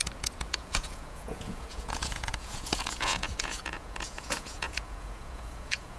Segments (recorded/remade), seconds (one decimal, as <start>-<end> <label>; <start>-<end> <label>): 0.0-6.0 remade